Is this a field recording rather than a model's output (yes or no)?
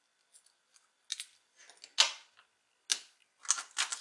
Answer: yes